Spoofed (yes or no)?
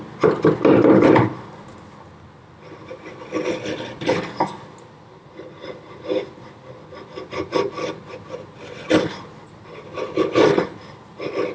no